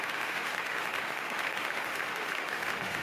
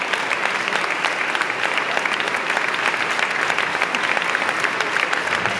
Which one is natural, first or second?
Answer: second